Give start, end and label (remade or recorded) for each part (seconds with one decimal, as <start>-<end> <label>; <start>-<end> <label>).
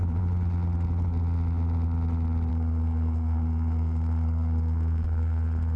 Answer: 0.0-2.5 recorded; 2.5-5.8 remade